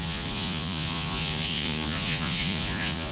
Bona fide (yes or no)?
no